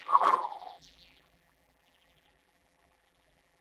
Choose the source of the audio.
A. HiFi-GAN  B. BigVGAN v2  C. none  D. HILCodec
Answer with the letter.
B